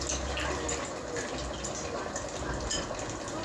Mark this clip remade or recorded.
recorded